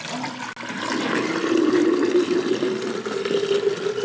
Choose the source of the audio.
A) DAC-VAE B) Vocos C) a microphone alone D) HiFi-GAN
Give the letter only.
C